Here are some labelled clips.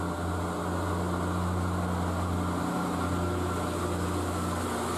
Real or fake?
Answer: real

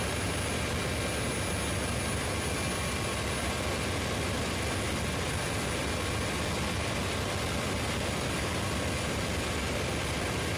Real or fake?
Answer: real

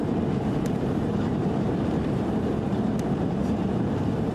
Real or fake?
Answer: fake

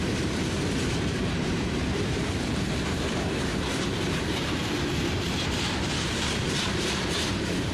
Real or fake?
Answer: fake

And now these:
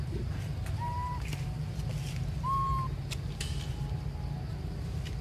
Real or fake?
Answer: real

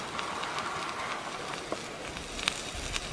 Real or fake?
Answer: real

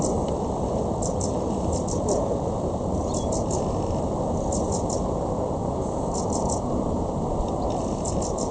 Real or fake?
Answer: real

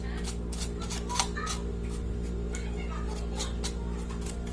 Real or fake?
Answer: real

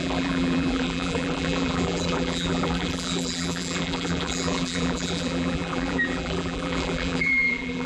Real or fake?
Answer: fake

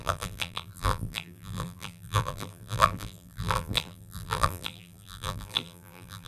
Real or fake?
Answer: fake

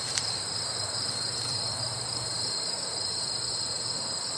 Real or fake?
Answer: fake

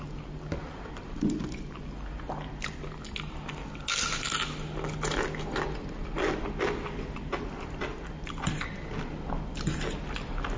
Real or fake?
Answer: real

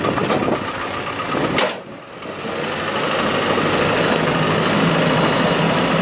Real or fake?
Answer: real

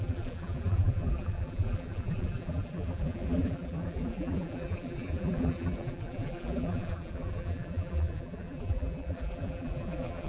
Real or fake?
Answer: fake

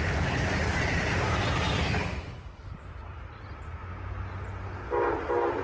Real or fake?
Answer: real